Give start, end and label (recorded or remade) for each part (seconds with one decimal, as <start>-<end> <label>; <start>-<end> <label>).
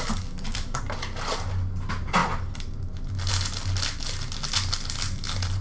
0.0-0.8 remade; 0.8-5.6 recorded